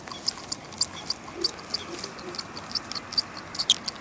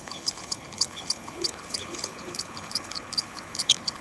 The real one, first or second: first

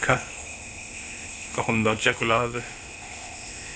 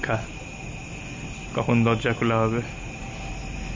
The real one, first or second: second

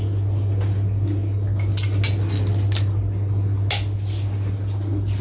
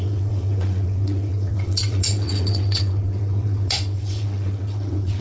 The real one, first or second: first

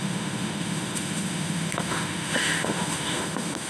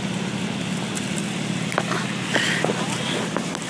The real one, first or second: second